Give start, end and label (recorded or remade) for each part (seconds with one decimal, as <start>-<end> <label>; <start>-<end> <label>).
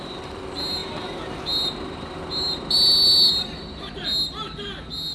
0.0-5.1 recorded